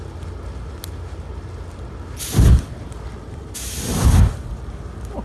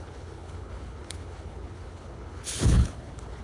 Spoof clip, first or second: second